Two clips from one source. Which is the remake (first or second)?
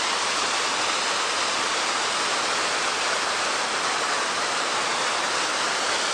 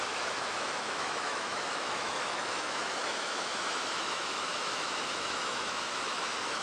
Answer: second